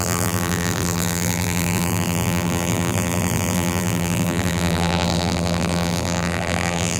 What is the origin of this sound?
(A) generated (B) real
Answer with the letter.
A